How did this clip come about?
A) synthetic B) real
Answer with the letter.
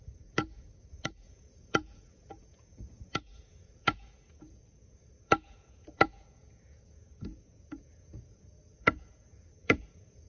A